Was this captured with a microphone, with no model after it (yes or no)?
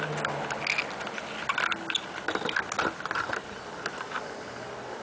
yes